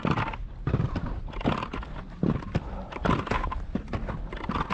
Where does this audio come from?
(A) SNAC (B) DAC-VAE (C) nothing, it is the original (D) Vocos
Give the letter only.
C